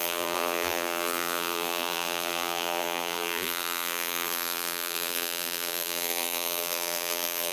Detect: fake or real fake